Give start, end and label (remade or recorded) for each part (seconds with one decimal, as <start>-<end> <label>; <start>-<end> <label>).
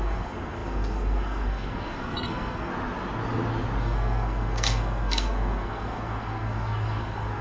0.0-2.7 remade; 2.7-3.8 recorded; 3.8-7.4 remade